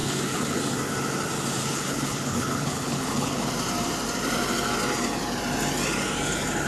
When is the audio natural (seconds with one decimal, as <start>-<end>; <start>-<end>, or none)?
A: 0.6-1.6; 3.5-6.7